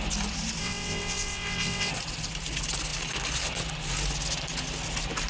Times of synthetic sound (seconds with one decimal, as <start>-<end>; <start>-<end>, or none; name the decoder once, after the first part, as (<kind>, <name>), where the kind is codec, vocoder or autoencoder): 0.6-1.9 (vocoder, WaveNeXt)